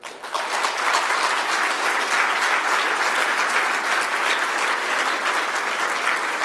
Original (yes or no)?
yes